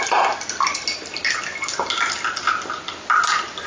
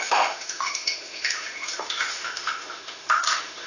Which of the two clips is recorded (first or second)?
first